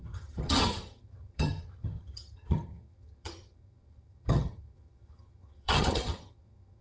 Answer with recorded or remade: remade